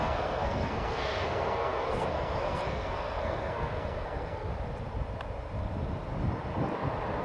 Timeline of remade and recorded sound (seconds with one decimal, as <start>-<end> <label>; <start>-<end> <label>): 0.0-4.5 remade; 4.5-7.2 recorded